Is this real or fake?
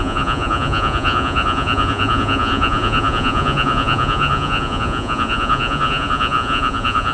fake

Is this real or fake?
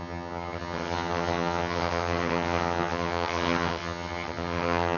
fake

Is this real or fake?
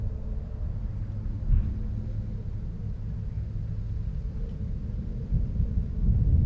real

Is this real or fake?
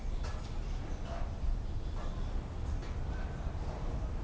real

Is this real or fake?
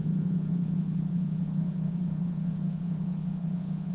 fake